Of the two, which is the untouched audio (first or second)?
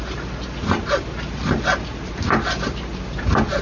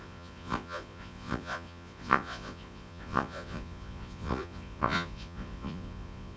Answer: first